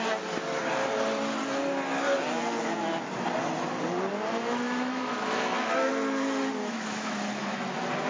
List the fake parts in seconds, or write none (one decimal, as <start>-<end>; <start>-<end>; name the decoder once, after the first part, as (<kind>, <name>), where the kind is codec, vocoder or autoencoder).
4.1-5.9 (autoencoder, DAC-VAE); 6.6-7.6